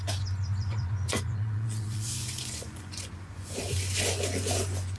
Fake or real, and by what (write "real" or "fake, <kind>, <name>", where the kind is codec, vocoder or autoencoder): fake, vocoder, Vocos